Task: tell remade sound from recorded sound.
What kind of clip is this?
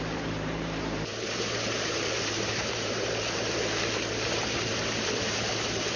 remade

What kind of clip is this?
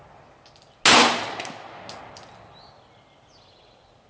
recorded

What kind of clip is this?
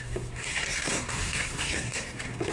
remade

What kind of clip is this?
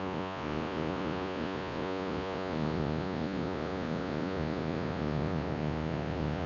remade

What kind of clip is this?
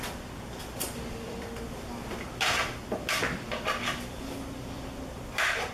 remade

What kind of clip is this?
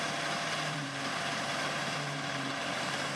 remade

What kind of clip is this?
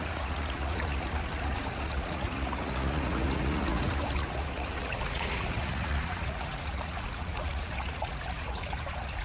remade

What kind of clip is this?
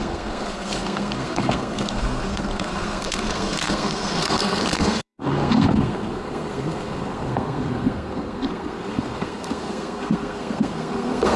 remade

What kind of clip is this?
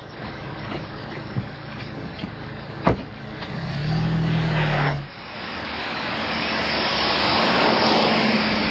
remade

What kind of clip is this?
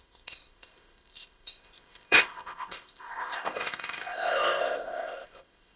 remade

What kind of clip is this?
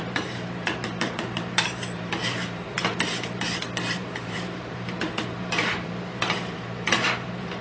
remade